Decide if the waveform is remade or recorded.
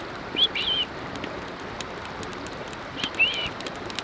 recorded